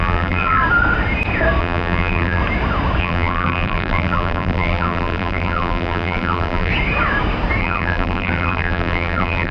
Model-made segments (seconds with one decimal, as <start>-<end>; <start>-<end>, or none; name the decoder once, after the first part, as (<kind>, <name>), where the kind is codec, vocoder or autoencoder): 0.0-0.6 (vocoder, BigVGAN v2); 1.6-2.4; 3.0-6.7; 7.6-9.5